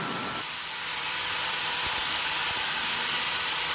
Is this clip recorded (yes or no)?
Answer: no